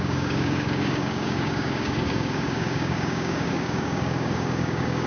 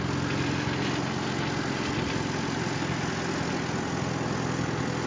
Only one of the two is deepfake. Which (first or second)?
first